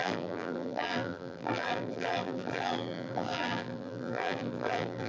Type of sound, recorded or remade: remade